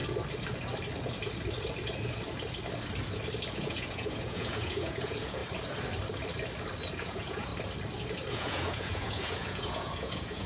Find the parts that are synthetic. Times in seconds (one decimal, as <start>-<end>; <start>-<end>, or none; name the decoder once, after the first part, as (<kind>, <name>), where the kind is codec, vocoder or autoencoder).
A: 3.5-5.4 (vocoder, Vocos); 6.9-7.5; 8.3-10.5